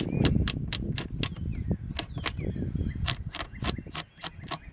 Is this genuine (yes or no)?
yes